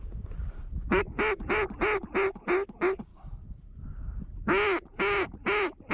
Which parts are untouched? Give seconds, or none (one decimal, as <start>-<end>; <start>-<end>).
0.0-3.1; 3.6-5.9